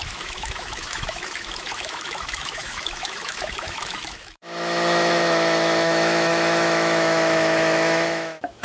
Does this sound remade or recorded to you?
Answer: remade